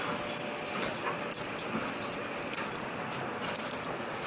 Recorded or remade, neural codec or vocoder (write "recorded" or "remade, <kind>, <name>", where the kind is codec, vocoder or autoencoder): recorded